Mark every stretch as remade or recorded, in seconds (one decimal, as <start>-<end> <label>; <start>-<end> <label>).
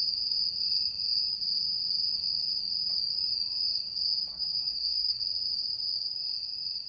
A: 0.0-4.3 recorded; 4.3-5.2 remade; 5.2-6.9 recorded